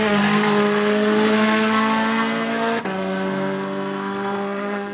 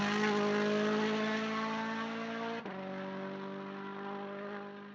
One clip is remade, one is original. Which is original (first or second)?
second